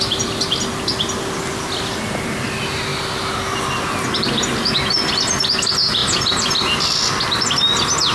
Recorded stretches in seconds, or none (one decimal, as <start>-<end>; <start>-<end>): 0.0-8.1